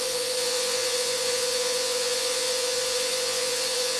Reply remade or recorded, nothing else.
remade